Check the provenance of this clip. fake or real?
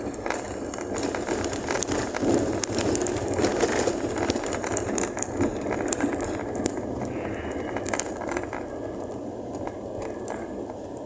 real